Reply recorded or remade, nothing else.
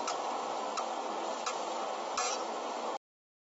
recorded